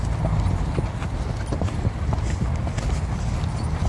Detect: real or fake real